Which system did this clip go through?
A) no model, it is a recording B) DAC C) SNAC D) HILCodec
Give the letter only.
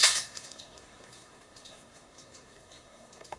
C